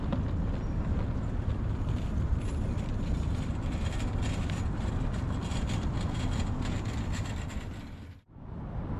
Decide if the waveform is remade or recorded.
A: remade